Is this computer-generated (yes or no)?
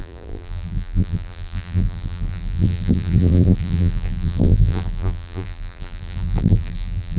yes